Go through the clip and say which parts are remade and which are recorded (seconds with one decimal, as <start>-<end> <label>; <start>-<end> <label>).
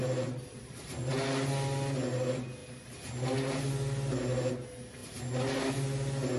0.0-1.1 remade; 1.1-6.4 recorded